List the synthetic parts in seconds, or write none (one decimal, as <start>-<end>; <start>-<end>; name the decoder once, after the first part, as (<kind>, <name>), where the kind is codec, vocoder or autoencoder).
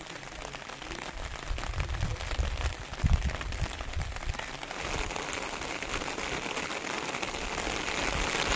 none